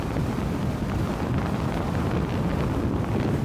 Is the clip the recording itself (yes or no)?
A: yes